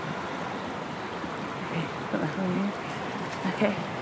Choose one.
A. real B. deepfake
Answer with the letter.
A